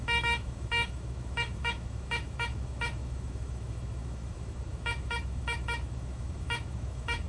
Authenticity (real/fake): fake